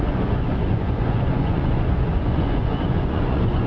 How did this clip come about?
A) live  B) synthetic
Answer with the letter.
B